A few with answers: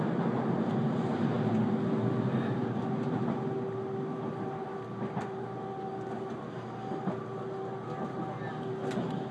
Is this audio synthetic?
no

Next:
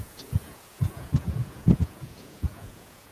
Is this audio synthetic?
yes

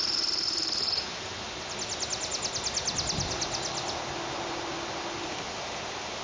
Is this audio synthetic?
no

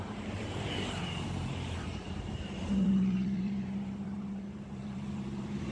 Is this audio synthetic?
yes